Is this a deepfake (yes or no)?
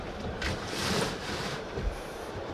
yes